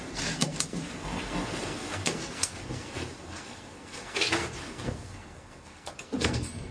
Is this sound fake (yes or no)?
yes